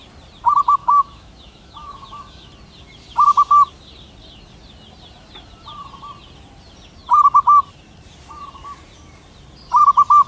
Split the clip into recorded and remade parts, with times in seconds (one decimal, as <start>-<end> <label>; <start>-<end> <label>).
0.0-0.8 recorded; 0.8-2.5 remade; 2.5-10.3 recorded